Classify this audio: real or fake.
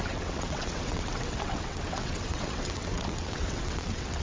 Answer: fake